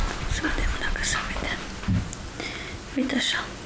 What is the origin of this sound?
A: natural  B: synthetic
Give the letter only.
A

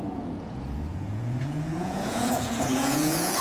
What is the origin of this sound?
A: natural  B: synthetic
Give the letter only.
B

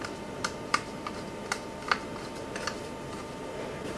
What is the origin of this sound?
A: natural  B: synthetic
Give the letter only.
B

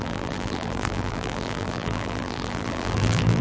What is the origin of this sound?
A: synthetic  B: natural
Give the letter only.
A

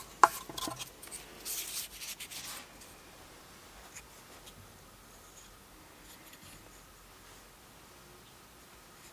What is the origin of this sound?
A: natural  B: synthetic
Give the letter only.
A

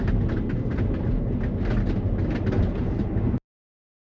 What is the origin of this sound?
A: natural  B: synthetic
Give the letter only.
A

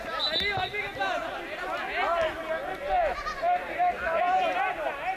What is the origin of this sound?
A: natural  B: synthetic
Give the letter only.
A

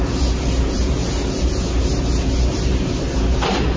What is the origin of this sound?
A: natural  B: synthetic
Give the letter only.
B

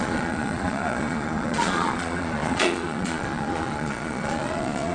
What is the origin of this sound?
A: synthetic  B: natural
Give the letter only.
A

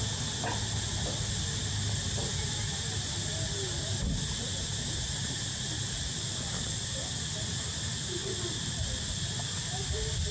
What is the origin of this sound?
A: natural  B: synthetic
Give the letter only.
A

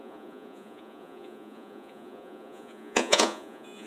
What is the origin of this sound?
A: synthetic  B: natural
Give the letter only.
A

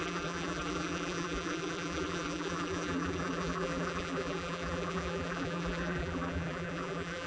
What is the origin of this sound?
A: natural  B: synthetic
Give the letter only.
B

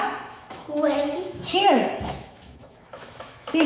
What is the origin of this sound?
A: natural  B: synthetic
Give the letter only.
B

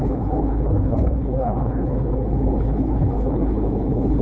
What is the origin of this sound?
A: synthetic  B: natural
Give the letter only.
A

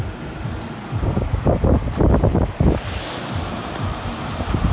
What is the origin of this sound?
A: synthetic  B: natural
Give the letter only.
B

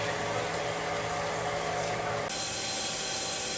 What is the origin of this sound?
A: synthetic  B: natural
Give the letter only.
B